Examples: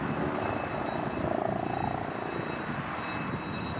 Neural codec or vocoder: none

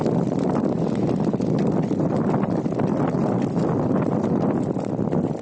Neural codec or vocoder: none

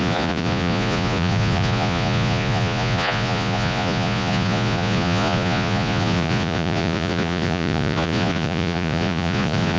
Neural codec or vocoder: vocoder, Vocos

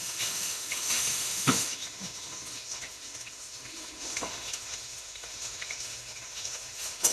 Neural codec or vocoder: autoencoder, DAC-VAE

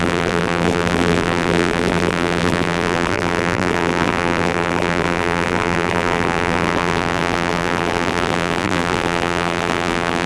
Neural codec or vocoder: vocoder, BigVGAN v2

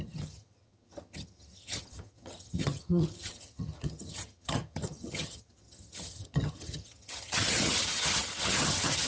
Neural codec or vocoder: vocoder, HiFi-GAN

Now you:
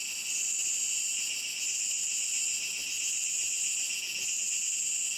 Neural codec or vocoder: none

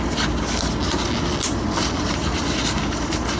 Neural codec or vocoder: none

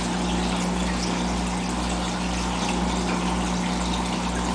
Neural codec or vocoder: none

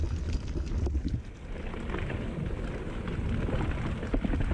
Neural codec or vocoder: none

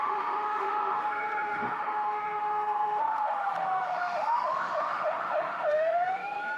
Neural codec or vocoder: autoencoder, DAC-VAE